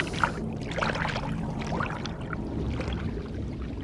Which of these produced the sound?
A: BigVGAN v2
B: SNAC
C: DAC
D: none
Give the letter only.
D